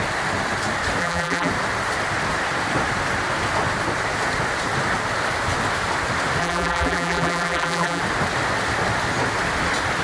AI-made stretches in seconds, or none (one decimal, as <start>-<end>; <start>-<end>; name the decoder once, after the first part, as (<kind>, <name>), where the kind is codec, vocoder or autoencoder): 1.0-1.5 (vocoder, BigVGAN v2); 6.4-8.0